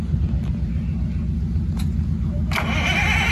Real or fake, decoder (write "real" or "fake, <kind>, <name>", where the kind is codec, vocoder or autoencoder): real